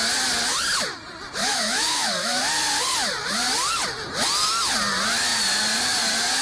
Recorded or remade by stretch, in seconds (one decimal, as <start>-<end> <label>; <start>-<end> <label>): 0.0-1.4 recorded; 1.4-2.4 remade; 2.4-6.4 recorded